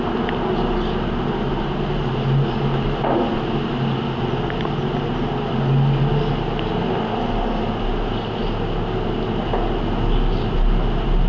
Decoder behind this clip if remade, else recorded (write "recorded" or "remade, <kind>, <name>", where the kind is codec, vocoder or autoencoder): recorded